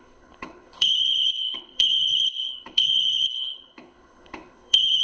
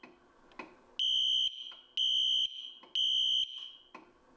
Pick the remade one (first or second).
first